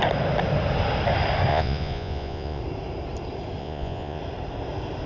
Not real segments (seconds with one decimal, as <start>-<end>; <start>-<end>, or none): 1.5-2.6; 3.6-4.2